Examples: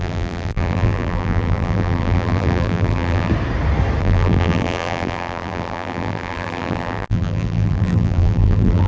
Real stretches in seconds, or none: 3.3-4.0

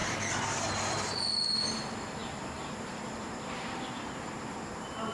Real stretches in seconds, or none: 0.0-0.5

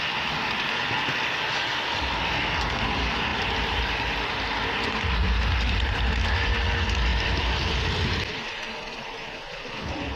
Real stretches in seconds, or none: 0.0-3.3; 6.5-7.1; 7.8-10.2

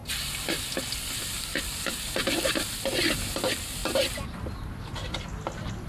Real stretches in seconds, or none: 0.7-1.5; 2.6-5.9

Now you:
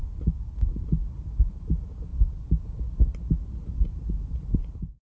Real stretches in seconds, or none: 0.0-5.2

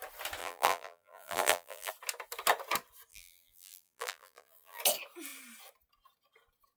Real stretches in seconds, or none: 0.0-0.4; 1.9-3.1; 4.8-6.8

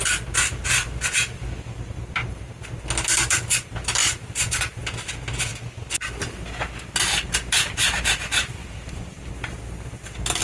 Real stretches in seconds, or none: 0.0-4.0; 5.1-8.6; 9.3-10.4

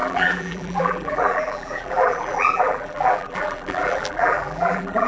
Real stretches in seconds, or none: none